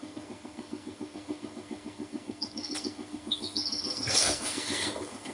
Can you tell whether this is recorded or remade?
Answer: remade